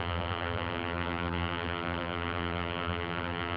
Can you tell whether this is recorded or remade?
remade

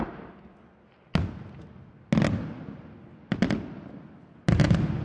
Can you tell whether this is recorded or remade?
recorded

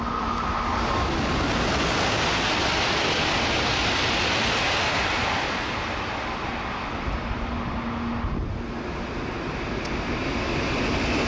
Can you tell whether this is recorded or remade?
recorded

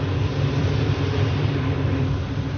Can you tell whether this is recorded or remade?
remade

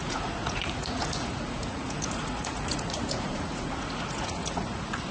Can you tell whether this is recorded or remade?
remade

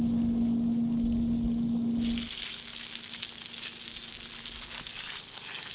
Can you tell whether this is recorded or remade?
recorded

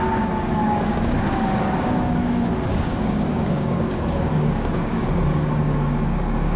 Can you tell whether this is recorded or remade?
remade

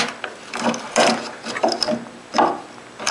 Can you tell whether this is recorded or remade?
recorded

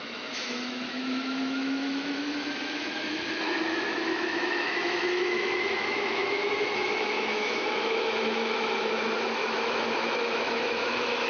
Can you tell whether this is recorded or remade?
remade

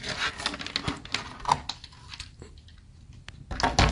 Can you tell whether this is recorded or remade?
recorded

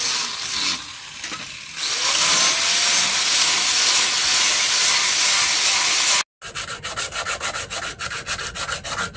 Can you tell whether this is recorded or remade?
recorded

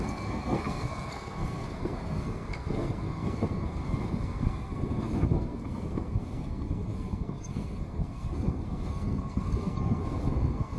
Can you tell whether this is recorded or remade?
remade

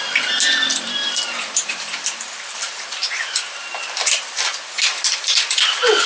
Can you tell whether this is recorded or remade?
remade